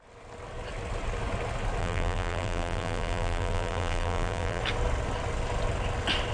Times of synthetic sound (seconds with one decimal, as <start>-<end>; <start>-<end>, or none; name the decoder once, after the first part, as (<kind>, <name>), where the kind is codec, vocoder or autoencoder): 1.8-4.6 (vocoder, BigVGAN v2)